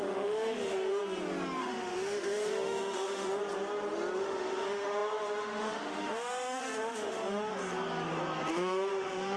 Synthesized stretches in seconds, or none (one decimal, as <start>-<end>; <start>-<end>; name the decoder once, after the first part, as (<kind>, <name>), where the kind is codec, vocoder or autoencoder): 0.0-1.0 (autoencoder, DAC-VAE); 1.6-3.4; 4.2-7.5; 8.5-9.4